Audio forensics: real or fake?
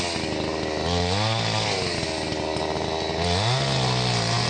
real